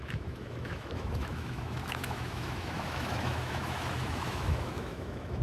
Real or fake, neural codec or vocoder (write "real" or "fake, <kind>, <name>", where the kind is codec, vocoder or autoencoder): fake, autoencoder, DAC-VAE